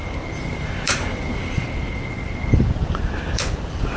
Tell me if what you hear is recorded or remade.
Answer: remade